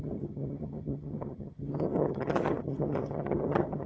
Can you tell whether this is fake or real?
fake